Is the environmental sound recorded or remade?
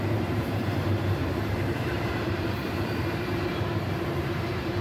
remade